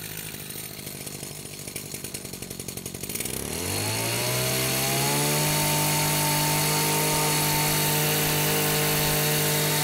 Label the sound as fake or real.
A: real